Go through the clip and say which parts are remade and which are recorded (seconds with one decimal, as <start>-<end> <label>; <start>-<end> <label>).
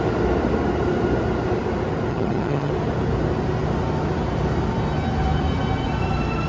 0.0-2.1 recorded; 2.1-2.7 remade; 2.7-6.5 recorded